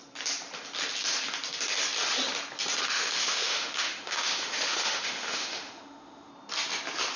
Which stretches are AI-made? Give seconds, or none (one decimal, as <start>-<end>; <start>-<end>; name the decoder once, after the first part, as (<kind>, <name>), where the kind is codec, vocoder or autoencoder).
2.9-6.3 (autoencoder, DAC-VAE)